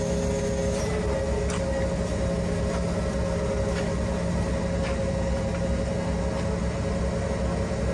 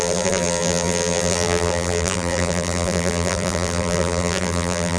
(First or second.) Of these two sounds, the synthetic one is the second